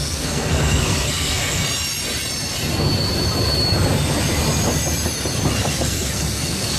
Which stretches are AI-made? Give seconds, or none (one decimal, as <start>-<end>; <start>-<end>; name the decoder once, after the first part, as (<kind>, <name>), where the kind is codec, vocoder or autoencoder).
0.0-1.6 (codec, SNAC); 5.7-6.8